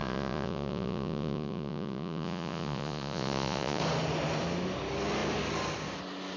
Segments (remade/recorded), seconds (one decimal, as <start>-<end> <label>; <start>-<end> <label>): 0.0-3.8 remade; 3.8-6.4 recorded